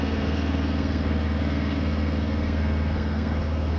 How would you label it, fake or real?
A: fake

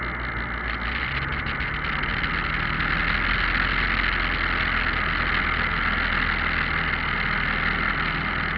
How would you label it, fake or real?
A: real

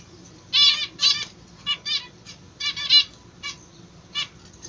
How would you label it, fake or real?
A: real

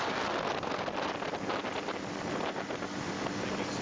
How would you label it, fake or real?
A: real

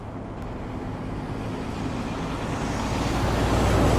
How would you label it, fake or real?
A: real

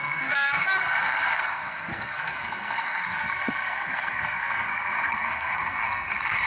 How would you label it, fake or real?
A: fake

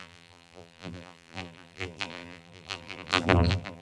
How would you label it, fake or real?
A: fake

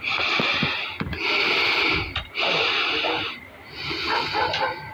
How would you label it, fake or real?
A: real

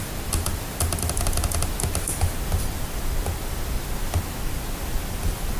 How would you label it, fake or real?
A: real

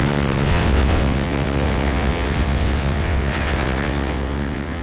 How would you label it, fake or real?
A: fake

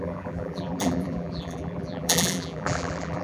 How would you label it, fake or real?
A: fake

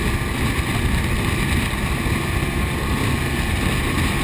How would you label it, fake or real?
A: real